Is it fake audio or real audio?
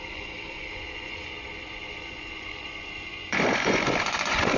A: fake